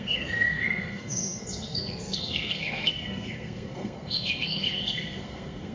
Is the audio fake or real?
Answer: fake